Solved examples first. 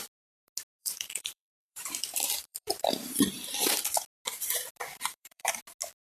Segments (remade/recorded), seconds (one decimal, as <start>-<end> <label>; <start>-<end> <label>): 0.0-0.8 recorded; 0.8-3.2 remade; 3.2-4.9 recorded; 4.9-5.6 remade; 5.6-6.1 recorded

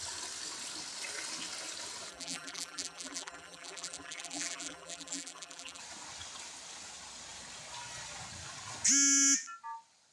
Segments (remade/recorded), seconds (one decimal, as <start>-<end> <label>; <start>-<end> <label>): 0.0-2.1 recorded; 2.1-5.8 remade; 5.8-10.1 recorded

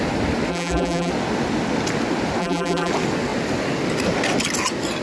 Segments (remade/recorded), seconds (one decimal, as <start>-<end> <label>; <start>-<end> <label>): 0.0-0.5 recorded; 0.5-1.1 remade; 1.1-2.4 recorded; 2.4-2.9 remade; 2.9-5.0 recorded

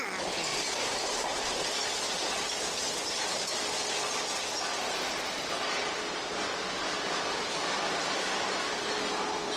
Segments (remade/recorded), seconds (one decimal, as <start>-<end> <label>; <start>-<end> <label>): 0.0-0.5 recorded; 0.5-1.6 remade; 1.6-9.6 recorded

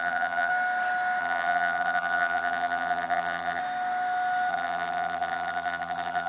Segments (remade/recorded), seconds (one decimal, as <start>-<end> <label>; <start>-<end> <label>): 0.0-0.5 remade; 0.5-1.2 recorded; 1.2-3.6 remade; 3.6-4.5 recorded; 4.5-6.3 remade